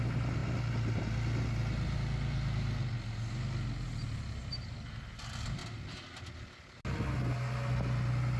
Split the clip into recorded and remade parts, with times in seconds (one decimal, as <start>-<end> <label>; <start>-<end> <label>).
0.0-8.4 recorded